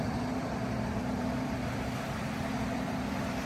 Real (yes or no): no